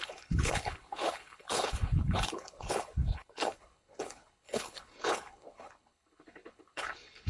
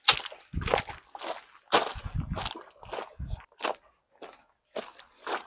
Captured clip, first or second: second